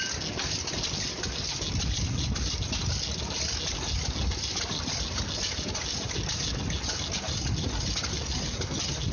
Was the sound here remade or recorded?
recorded